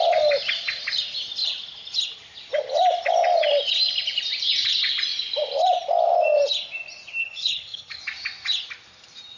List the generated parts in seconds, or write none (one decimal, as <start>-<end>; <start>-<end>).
7.2-8.0